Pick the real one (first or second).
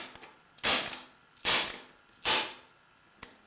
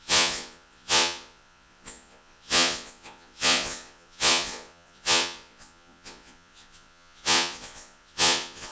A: first